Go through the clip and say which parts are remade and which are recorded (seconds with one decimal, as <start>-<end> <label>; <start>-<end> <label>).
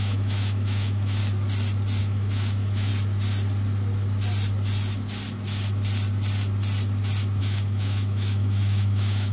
0.0-1.2 remade; 1.2-2.0 recorded; 2.0-2.9 remade; 2.9-7.4 recorded; 7.4-9.3 remade